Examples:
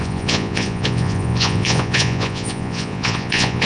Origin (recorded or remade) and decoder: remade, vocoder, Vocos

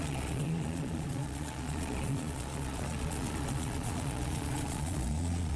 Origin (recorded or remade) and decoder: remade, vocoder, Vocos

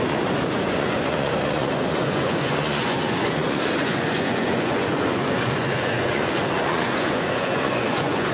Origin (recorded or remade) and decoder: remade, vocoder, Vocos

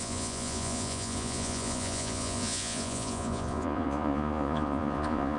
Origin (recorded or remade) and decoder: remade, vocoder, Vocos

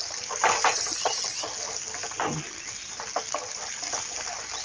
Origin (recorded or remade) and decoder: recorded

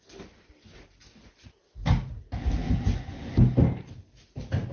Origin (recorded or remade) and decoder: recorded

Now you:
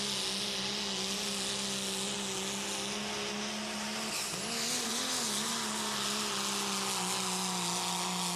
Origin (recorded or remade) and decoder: recorded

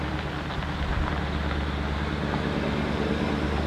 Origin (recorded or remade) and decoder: recorded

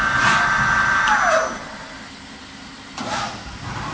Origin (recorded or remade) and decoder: recorded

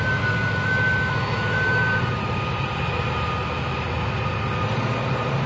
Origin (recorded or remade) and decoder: recorded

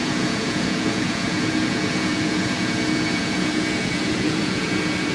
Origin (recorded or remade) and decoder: remade, vocoder, Vocos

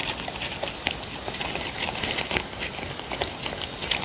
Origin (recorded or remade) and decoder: recorded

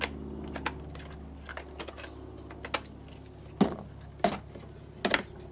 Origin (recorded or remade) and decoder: recorded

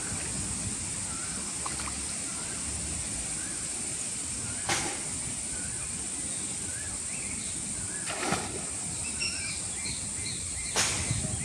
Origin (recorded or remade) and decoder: recorded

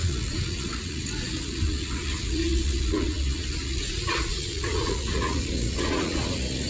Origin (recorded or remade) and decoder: remade, vocoder, Vocos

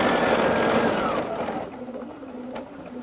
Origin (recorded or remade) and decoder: recorded